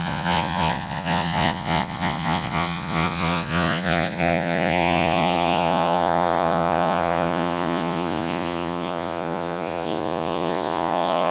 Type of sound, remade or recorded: remade